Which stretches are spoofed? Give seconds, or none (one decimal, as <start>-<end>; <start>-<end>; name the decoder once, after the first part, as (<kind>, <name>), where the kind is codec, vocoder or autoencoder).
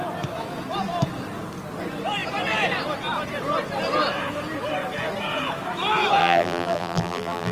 6.2-7.5 (vocoder, BigVGAN v2)